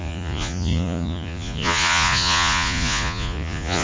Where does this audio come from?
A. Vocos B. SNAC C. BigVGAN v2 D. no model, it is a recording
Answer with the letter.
A